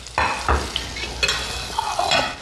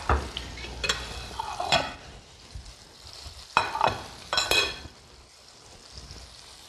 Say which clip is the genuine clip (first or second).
first